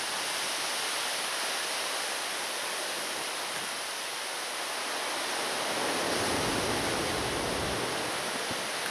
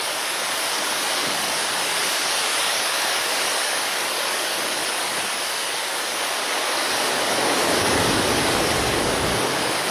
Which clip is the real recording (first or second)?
first